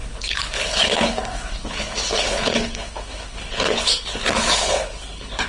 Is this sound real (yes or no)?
no